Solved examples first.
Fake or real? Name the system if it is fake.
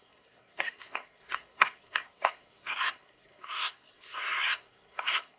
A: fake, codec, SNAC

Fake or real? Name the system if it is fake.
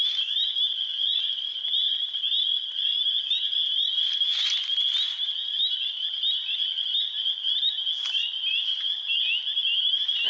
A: real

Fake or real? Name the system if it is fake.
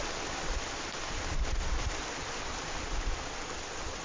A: real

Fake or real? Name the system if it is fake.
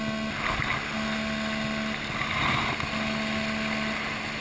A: real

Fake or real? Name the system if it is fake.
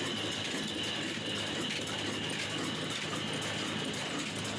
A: real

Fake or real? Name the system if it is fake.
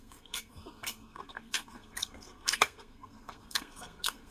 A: fake, codec, SNAC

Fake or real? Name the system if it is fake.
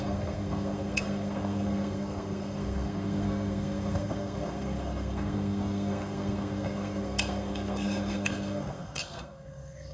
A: fake, codec, SNAC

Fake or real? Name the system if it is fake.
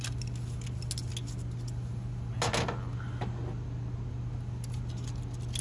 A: real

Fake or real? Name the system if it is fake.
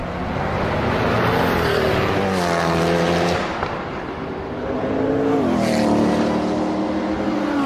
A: real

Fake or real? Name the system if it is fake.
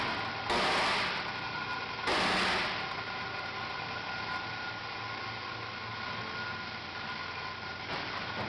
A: real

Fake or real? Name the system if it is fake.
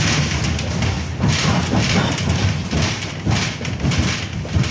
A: real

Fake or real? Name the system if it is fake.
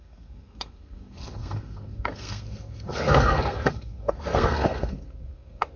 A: fake, codec, SNAC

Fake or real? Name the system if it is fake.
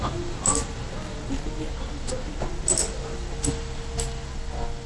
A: real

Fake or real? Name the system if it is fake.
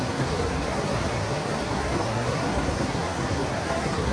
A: fake, codec, SNAC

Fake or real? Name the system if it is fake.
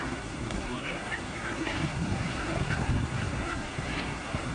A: fake, codec, SNAC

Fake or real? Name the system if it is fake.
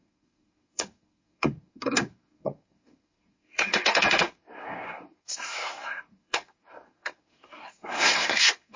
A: fake, codec, SNAC